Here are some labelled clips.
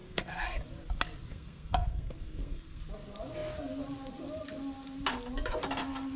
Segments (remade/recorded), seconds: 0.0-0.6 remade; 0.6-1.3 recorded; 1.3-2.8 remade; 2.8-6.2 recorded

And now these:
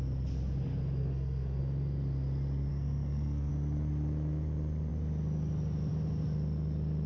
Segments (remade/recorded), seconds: 0.0-1.0 recorded; 1.0-1.6 remade; 1.6-2.7 recorded; 2.7-3.5 remade; 3.5-7.1 recorded